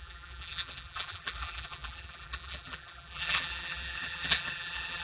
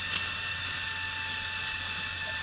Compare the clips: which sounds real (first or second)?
second